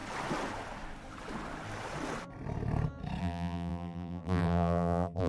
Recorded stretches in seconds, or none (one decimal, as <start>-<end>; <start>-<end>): 0.0-3.2